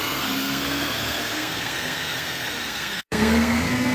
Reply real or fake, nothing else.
fake